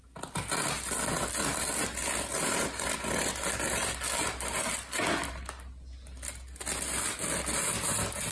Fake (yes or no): no